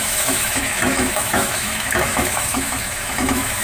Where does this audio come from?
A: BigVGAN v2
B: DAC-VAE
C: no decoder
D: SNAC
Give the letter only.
B